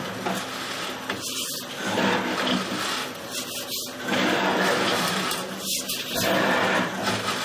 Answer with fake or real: real